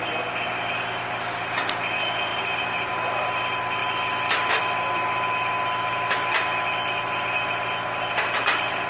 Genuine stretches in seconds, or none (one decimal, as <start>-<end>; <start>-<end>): 0.0-2.3; 2.9-8.9